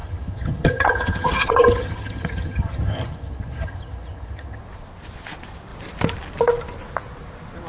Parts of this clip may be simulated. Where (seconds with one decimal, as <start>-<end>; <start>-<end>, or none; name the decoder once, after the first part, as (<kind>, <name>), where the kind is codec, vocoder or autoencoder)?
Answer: 0.0-4.6 (vocoder, HiFi-GAN)